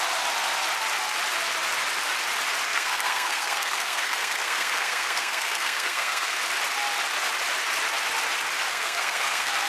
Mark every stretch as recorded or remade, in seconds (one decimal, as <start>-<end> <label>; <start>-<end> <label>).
0.0-2.7 recorded; 2.7-6.4 remade; 6.4-8.7 recorded; 8.7-9.7 remade